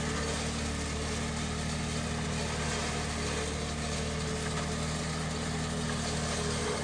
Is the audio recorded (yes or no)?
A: yes